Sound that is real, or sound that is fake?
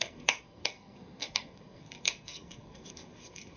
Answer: fake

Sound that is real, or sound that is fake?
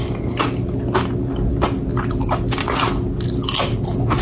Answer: real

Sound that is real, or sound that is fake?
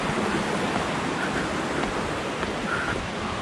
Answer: real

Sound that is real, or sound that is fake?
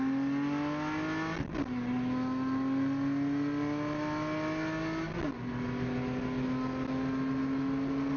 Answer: real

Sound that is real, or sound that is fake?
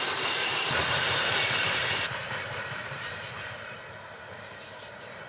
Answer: fake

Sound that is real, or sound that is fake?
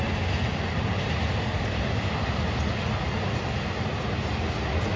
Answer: real